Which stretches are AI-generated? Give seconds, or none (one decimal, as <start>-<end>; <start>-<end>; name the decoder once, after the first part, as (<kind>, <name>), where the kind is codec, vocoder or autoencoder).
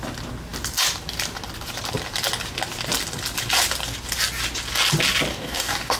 5.3-6.0 (codec, DAC)